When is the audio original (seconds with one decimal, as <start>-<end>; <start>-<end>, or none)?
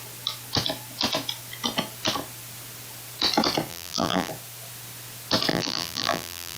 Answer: 0.0-3.7; 4.3-5.5